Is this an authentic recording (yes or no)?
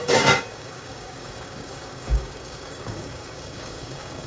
no